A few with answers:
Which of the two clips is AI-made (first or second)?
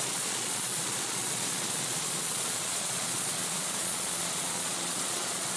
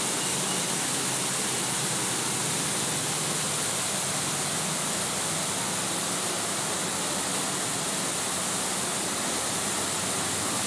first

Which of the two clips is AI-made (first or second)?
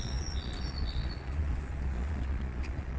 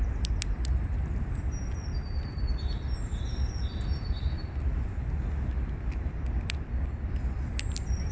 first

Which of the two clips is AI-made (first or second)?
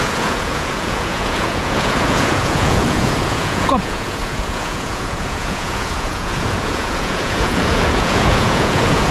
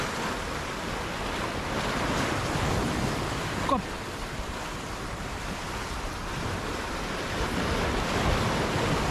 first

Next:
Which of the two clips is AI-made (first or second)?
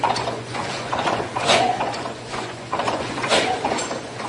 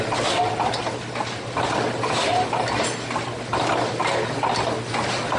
first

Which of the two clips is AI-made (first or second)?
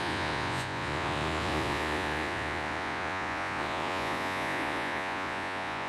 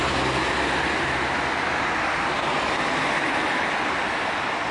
first